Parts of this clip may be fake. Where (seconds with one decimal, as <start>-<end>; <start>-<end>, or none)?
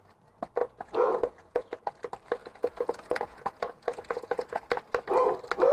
0.6-1.8; 2.4-4.6